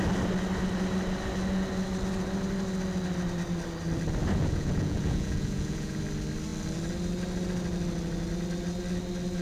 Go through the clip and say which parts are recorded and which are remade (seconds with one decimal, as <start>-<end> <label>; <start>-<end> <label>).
0.0-4.2 recorded; 4.2-6.0 remade; 6.0-9.4 recorded